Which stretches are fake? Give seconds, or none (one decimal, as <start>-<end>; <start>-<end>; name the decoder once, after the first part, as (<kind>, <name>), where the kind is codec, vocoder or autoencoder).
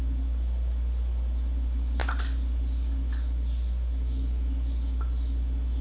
none